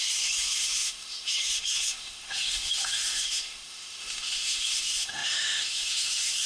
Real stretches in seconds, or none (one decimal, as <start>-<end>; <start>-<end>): none